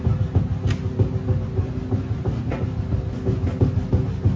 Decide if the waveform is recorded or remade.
recorded